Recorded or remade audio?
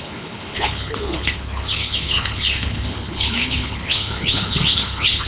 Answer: remade